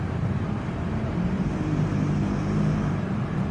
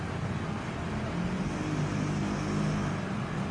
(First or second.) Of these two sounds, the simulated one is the first